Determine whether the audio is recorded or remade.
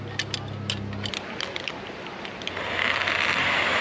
recorded